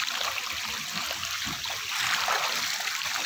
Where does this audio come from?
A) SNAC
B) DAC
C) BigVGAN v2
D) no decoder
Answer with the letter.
D